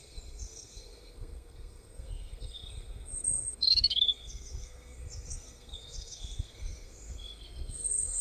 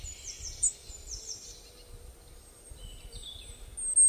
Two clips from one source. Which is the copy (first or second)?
first